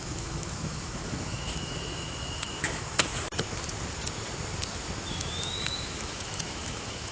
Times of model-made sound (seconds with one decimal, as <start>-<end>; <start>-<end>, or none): 0.0-3.1; 5.1-7.1